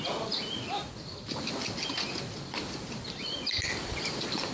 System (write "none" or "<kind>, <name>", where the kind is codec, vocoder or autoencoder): none